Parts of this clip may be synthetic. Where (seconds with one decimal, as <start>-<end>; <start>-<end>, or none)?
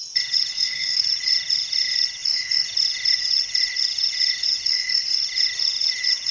0.5-1.0